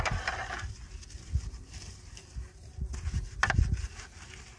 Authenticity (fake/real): real